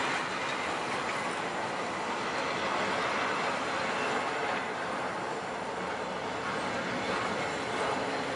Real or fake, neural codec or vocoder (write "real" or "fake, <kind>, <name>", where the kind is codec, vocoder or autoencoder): real